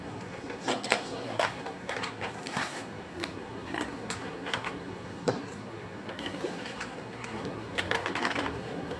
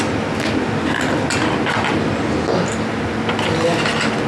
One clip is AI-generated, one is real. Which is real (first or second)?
second